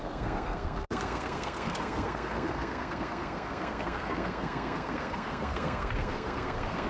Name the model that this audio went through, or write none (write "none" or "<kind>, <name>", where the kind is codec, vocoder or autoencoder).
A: codec, SNAC